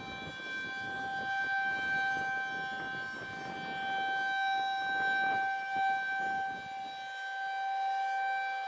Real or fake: real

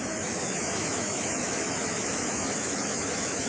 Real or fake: fake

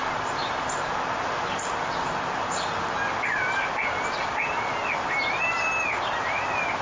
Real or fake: real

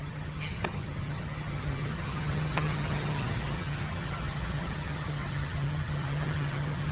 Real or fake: fake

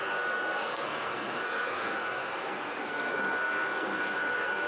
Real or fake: fake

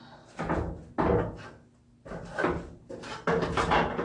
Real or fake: real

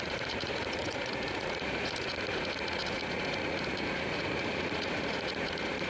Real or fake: fake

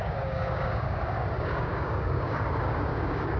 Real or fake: fake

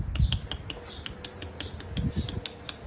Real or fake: real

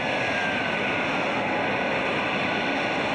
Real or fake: real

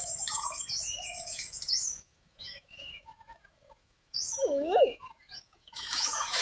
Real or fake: fake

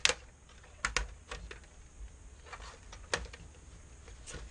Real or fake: real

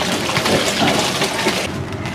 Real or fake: real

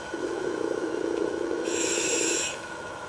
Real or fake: fake